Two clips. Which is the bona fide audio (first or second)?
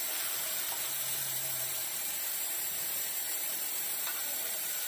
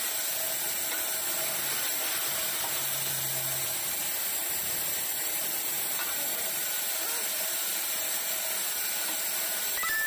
second